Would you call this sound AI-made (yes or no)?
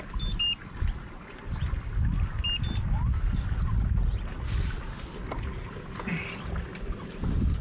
no